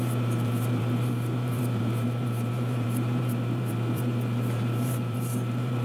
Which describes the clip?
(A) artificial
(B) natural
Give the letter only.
A